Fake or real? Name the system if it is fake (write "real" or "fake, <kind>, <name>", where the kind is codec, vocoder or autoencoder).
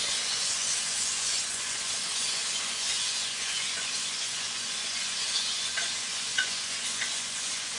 fake, vocoder, Vocos